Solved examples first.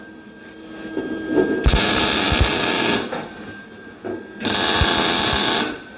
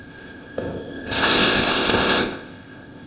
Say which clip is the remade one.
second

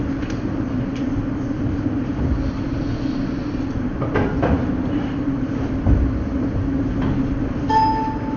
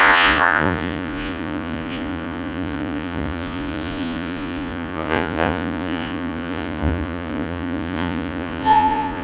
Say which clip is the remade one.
second